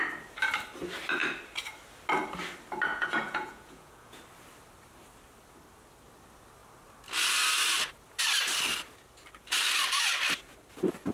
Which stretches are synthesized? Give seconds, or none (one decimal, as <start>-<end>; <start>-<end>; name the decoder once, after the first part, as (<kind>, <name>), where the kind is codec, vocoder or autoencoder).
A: 2.9-4.2 (vocoder, Vocos)